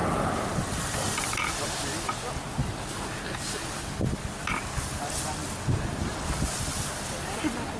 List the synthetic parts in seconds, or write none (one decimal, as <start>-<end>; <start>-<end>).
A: none